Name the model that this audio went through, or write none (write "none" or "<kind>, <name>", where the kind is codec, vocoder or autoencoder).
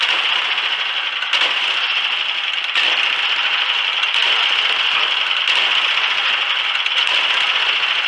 none